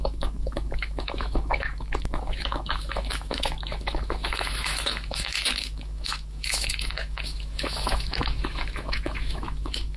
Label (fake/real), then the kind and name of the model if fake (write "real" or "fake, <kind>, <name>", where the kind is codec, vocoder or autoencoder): fake, autoencoder, DAC-VAE